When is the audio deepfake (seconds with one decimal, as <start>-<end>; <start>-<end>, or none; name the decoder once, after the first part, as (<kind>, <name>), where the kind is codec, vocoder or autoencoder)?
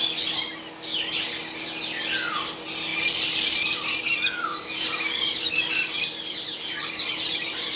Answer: 2.9-7.8 (vocoder, BigVGAN v2)